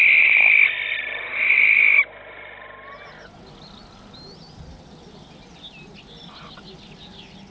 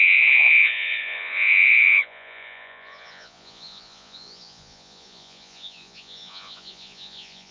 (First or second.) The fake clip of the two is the second